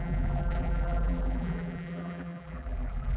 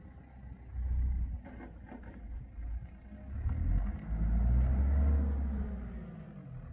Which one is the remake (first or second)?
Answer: first